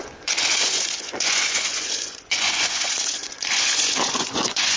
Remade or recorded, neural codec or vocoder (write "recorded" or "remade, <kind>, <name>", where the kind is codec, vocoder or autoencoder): remade, vocoder, Vocos